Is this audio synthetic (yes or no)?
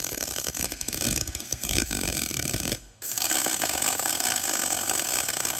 yes